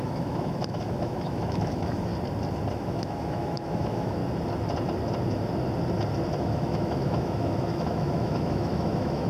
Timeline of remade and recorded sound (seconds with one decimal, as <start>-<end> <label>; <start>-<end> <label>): 0.0-2.1 remade; 2.1-2.7 recorded; 2.7-4.2 remade; 4.2-6.4 recorded; 6.4-9.3 remade